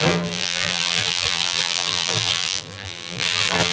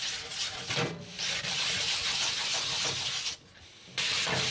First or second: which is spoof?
first